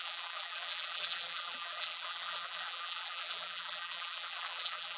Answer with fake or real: fake